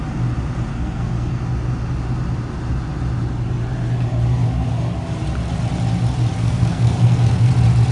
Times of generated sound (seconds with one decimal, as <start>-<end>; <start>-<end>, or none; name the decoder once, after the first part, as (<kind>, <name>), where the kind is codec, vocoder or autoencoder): 0.7-1.4 (codec, SNAC); 6.4-7.5